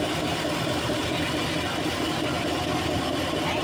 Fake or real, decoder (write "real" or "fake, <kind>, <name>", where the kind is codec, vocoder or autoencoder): real